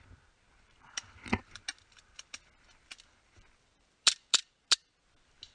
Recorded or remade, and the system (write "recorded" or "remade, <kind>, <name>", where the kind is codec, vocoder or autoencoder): recorded